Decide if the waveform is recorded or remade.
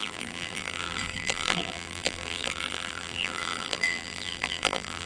remade